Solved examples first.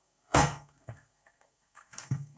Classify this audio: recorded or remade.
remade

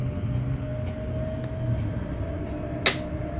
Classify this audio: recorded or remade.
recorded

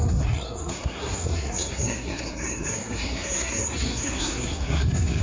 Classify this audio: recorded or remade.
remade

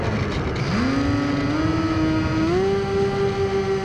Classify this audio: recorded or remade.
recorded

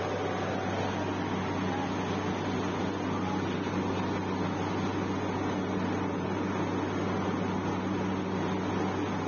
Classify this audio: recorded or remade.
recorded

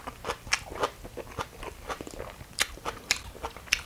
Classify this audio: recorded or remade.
recorded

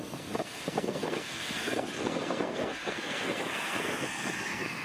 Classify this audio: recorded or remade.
remade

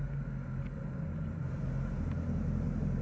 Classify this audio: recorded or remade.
recorded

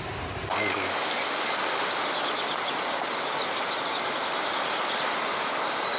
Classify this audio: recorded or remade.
recorded